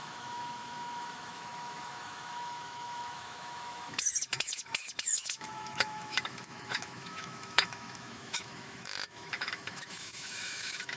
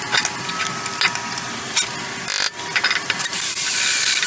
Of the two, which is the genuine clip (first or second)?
second